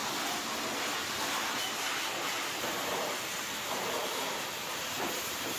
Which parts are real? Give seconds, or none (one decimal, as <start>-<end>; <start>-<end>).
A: 0.0-2.6